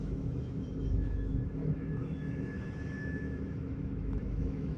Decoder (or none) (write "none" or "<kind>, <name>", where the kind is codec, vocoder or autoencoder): autoencoder, DAC-VAE